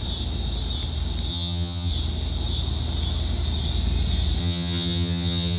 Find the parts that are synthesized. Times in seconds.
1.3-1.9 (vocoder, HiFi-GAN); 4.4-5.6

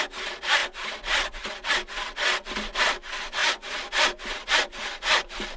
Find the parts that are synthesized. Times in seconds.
none

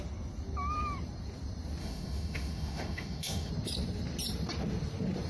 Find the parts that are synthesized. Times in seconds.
1.8-3.5 (autoencoder, DAC-VAE)

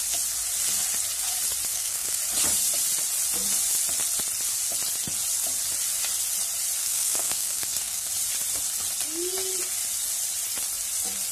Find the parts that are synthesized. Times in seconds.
1.7-2.2 (codec, SNAC); 6.8-8.1

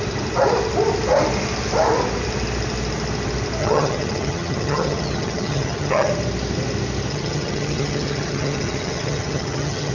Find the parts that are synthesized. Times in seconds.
3.6-6.1 (vocoder, HiFi-GAN); 7.1-9.9

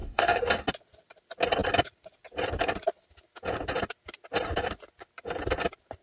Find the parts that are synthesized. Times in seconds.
0.0-0.5 (codec, DAC)

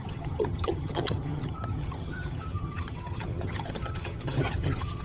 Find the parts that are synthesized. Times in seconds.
0.0-5.0 (vocoder, HiFi-GAN)